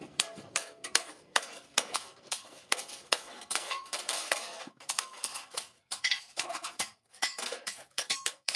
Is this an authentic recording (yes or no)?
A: no